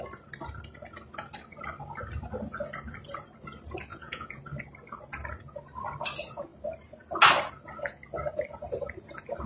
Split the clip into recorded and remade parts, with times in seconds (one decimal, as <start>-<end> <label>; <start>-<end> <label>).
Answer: 0.0-3.9 recorded; 3.9-4.4 remade; 4.4-9.5 recorded

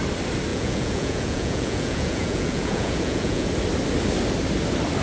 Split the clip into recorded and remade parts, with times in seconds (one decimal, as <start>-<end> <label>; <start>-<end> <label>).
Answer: 0.0-0.5 recorded; 0.5-3.5 remade; 3.5-5.0 recorded

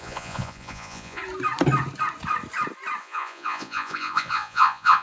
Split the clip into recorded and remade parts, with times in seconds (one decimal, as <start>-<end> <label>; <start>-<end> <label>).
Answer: 0.0-1.2 remade; 1.2-3.0 recorded; 3.0-5.0 remade

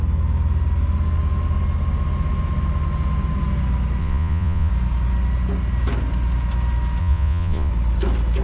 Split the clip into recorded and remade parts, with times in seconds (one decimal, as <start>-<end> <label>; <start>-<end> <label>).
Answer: 0.0-4.0 recorded; 4.0-4.7 remade; 4.7-7.0 recorded; 7.0-7.7 remade; 7.7-8.4 recorded

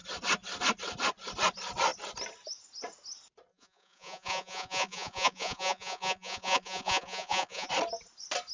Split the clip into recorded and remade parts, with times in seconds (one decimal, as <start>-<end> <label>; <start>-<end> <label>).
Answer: 0.0-3.5 recorded; 3.5-7.7 remade; 7.7-8.5 recorded

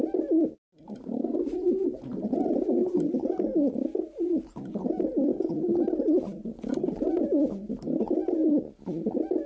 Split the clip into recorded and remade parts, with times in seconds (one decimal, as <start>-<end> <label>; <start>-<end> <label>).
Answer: 0.0-5.3 recorded; 5.3-5.8 remade; 5.8-9.5 recorded